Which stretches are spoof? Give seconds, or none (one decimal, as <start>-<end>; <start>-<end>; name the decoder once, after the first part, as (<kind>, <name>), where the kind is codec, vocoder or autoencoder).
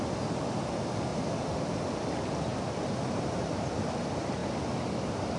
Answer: 1.1-1.8 (vocoder, BigVGAN v2)